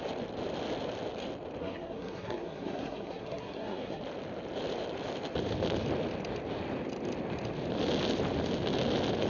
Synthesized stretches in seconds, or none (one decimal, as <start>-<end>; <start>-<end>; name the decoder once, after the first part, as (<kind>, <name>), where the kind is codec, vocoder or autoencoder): 1.6-4.0 (codec, SNAC)